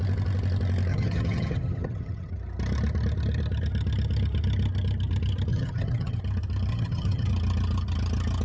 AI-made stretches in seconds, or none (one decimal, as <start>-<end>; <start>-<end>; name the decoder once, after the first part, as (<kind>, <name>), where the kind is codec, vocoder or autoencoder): 0.9-2.3 (vocoder, HiFi-GAN); 5.5-6.2; 6.7-7.3